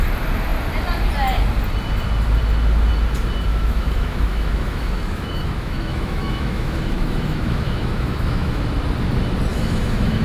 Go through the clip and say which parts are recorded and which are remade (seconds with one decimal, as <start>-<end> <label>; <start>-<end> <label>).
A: 0.0-3.5 recorded; 3.5-8.6 remade; 8.6-9.5 recorded; 9.5-10.2 remade